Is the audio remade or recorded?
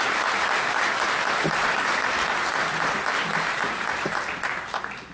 recorded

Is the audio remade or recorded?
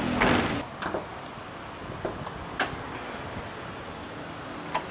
recorded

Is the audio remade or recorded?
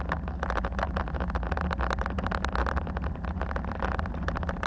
recorded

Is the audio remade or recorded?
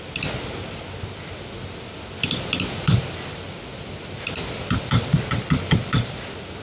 recorded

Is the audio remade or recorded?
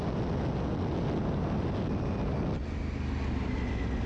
recorded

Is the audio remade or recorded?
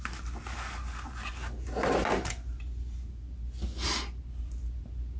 recorded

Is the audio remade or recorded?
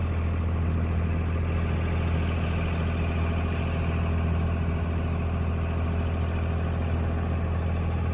recorded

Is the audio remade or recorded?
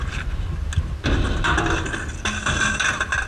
recorded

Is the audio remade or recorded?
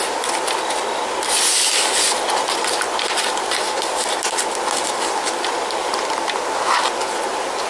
recorded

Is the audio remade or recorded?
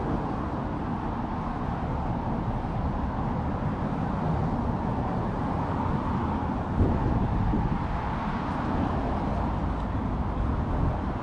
recorded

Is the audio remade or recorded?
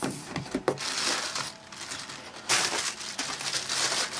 recorded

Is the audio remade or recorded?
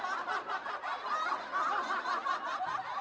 recorded